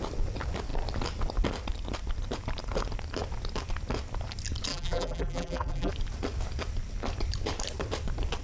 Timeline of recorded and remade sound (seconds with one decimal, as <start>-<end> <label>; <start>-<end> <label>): 0.0-4.7 recorded; 4.7-5.9 remade; 5.9-8.4 recorded